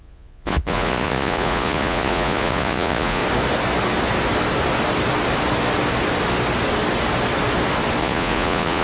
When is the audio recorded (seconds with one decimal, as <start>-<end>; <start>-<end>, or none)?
3.2-8.0